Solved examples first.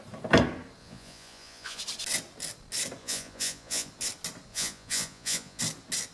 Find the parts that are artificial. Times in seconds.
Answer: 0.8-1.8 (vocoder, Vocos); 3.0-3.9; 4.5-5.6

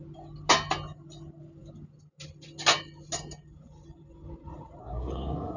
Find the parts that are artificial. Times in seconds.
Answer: 4.8-5.6 (codec, SNAC)